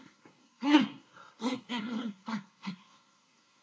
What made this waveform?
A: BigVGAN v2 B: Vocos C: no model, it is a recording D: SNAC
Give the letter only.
D